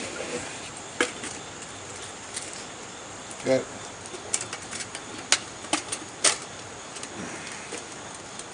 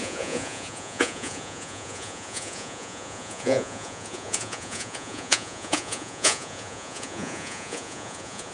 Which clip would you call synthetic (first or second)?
second